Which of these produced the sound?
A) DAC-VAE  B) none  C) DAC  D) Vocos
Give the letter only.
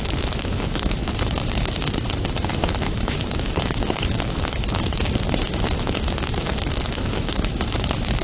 A